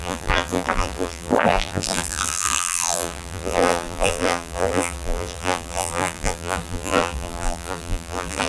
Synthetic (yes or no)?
yes